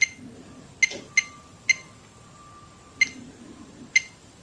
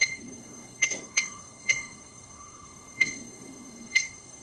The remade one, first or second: second